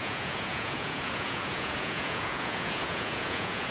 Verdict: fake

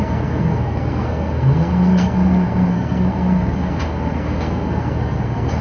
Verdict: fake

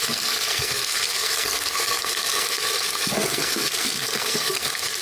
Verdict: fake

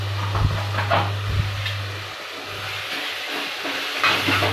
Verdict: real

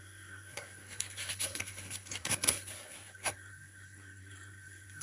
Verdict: fake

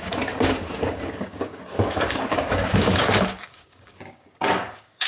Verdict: fake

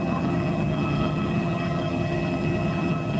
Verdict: fake